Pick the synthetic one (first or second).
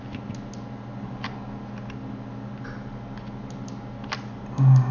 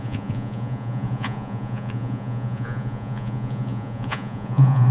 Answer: second